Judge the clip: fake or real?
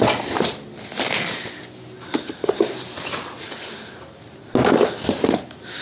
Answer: real